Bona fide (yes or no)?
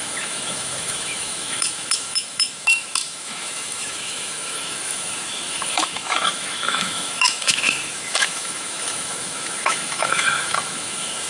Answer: no